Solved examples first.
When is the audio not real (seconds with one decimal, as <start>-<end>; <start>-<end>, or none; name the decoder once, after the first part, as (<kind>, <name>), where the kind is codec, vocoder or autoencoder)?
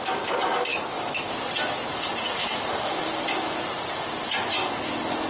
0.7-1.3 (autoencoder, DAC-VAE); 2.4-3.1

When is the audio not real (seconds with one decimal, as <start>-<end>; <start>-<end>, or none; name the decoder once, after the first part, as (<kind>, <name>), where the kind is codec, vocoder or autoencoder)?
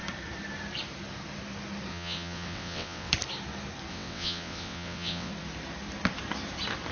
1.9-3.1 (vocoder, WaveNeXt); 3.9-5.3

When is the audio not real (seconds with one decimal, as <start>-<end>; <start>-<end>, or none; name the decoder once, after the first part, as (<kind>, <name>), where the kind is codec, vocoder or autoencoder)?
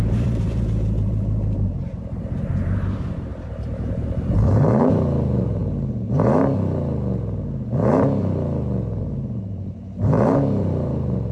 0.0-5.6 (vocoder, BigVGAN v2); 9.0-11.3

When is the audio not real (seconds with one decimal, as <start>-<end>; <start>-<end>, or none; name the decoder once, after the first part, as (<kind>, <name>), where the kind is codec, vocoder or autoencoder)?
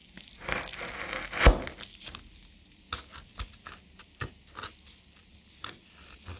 none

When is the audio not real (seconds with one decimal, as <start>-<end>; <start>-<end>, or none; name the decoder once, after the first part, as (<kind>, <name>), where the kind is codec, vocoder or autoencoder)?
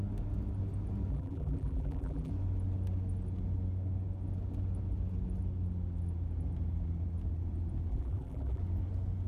1.1-2.3 (vocoder, BigVGAN v2); 7.9-8.6